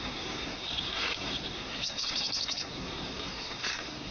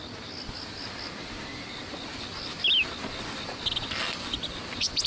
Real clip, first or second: second